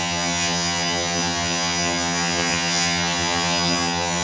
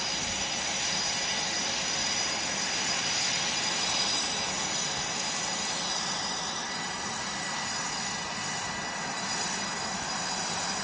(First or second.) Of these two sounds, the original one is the second